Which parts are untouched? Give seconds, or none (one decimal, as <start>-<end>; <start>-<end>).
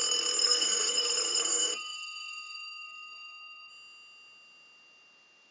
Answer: 0.0-0.4; 3.7-5.5